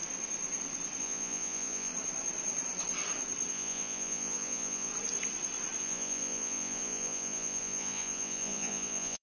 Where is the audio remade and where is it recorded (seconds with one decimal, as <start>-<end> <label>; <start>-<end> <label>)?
0.0-1.0 recorded; 1.0-1.9 remade; 1.9-3.5 recorded; 3.5-4.9 remade; 4.9-5.8 recorded; 5.8-9.2 remade